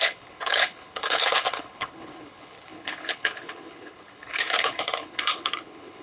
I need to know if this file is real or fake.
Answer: fake